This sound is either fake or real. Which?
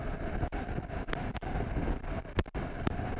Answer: real